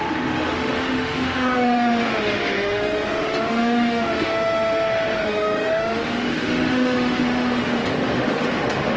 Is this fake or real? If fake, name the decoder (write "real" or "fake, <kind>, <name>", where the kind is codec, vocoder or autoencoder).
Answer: fake, autoencoder, DAC-VAE